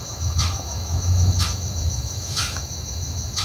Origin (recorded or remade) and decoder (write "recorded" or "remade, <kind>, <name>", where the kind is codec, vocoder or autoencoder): remade, autoencoder, DAC-VAE